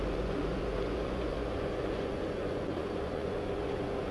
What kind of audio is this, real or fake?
fake